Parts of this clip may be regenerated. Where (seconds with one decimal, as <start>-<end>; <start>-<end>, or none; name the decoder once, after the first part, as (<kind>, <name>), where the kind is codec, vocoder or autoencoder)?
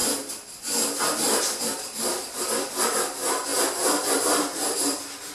0.0-5.3 (vocoder, BigVGAN v2)